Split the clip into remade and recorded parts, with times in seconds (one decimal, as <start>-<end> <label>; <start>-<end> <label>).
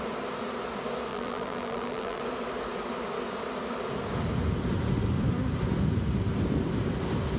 0.0-1.1 recorded; 1.1-2.2 remade; 2.2-7.4 recorded